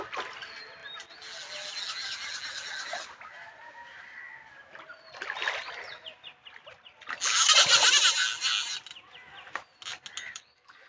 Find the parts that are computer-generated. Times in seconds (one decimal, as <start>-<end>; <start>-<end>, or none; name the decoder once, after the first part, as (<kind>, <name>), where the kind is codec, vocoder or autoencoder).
10.2-10.9 (codec, DAC)